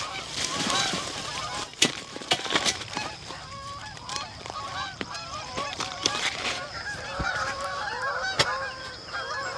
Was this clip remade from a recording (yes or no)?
yes